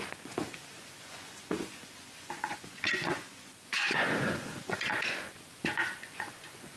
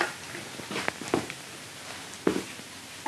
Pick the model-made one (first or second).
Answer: first